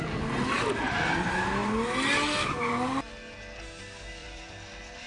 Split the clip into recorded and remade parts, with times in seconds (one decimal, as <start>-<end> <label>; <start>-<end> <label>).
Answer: 0.0-4.2 recorded; 4.2-5.1 remade